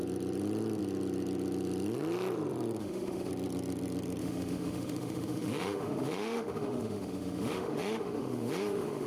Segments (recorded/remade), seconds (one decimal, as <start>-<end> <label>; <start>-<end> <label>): 0.0-2.8 recorded; 2.8-3.3 remade; 3.3-4.2 recorded; 4.2-9.1 remade